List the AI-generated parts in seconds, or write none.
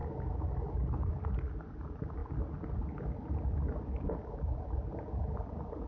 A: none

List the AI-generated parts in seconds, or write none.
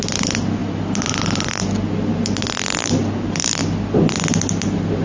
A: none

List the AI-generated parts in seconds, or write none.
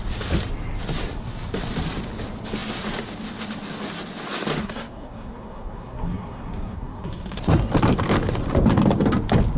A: 4.6-7.7 (codec, SNAC)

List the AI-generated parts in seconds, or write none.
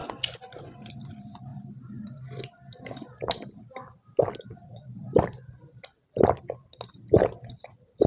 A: none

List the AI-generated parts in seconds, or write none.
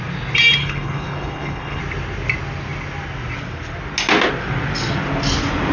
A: 0.6-1.8 (codec, HILCodec)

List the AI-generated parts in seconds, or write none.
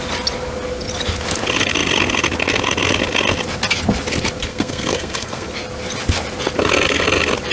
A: 4.5-5.5 (codec, SNAC)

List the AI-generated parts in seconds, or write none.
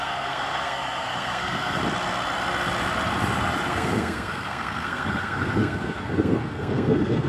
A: 0.0-1.8 (codec, SNAC); 3.7-7.3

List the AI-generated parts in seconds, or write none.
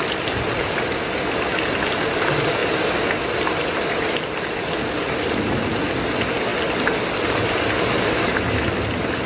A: none